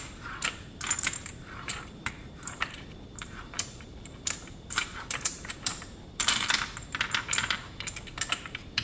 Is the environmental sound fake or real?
fake